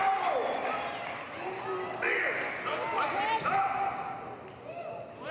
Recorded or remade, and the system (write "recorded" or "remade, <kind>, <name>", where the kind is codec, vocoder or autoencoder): recorded